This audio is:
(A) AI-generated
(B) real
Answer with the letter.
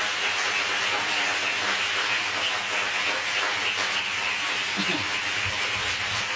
B